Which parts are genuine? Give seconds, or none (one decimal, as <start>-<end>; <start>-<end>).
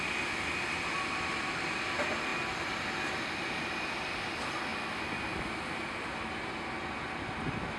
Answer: 0.0-7.8